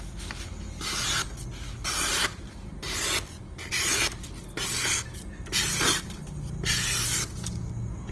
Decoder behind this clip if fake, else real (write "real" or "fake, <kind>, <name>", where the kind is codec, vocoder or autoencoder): real